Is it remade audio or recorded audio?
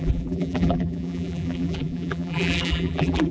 remade